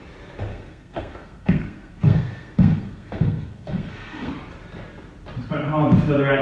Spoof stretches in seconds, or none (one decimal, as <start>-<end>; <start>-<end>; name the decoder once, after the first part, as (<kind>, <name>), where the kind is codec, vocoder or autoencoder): 0.5-4.3 (codec, SNAC)